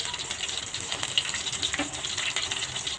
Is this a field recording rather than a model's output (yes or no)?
yes